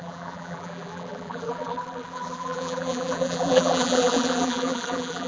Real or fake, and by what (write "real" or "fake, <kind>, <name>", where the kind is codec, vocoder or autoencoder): fake, vocoder, BigVGAN v2